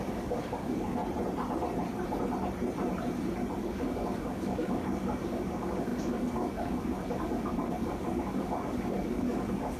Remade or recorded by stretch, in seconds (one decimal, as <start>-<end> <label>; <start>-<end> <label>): 0.0-1.0 remade; 1.0-3.6 recorded; 3.6-9.8 remade